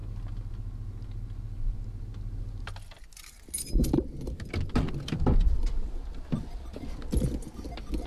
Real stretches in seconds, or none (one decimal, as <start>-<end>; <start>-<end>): 0.0-8.1